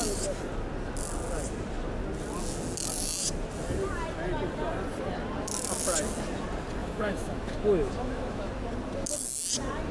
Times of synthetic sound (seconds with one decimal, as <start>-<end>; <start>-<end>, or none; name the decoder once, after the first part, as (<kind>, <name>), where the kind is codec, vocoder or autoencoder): 6.8-8.5 (autoencoder, DAC-VAE)